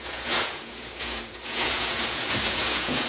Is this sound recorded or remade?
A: remade